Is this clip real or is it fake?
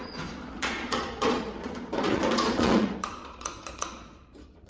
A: fake